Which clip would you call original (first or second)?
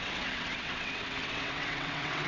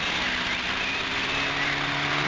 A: second